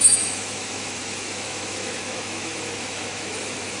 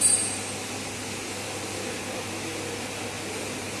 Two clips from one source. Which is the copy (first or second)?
first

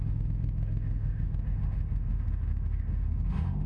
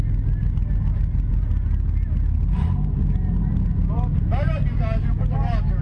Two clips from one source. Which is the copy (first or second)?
first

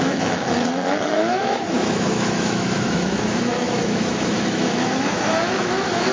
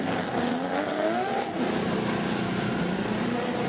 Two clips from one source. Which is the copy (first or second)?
first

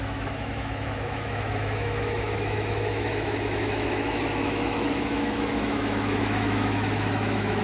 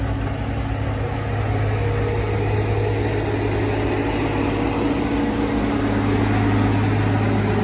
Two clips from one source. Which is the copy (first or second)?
first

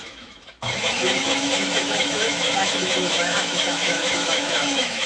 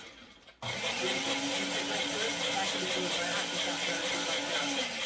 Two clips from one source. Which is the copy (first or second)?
first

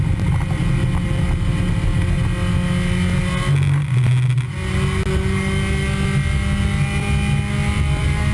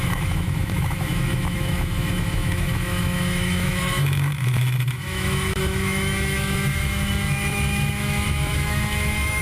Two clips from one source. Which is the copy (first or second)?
second